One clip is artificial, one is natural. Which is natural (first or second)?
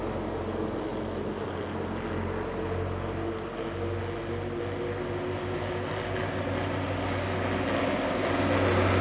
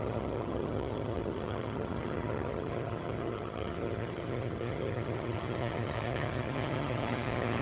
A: first